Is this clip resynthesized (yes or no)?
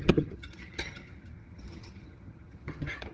yes